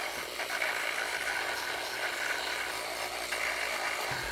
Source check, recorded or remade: recorded